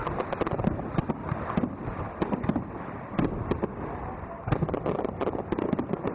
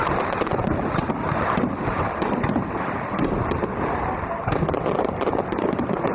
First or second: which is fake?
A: second